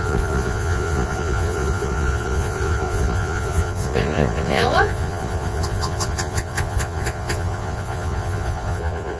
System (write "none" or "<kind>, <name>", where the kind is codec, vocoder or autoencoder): vocoder, Vocos